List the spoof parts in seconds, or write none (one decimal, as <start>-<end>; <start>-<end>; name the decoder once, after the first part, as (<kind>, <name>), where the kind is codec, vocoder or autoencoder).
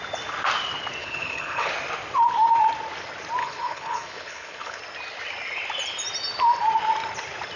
1.0-1.7 (codec, HILCodec); 3.4-4.8